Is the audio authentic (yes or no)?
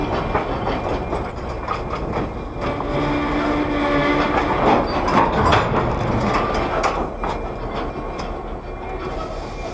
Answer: yes